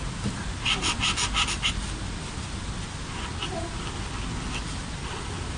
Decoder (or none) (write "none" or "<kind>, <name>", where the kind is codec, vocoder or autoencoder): none